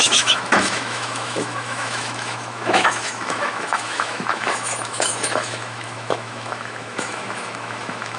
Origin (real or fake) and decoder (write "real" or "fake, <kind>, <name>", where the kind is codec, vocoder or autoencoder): fake, autoencoder, DAC-VAE